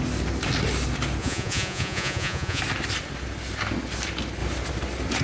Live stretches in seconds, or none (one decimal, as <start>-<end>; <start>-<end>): 0.0-1.2; 2.6-5.2